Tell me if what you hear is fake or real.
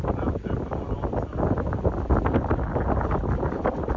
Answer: real